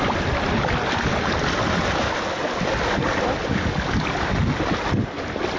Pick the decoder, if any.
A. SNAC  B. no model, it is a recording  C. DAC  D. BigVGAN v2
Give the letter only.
B